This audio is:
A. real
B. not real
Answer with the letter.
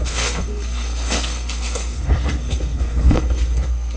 B